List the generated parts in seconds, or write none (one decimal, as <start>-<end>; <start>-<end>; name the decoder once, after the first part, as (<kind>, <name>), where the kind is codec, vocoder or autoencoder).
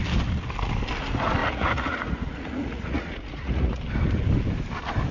1.4-3.8 (vocoder, Vocos)